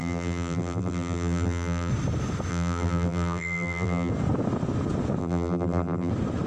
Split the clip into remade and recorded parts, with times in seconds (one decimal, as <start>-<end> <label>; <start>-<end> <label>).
0.0-1.9 remade; 1.9-2.5 recorded; 2.5-4.1 remade; 4.1-5.2 recorded; 5.2-6.1 remade; 6.1-6.5 recorded